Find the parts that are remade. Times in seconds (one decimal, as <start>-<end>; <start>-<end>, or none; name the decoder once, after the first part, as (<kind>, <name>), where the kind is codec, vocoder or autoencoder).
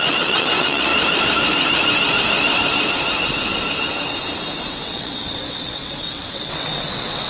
0.0-0.9 (vocoder, WaveNeXt); 4.7-7.3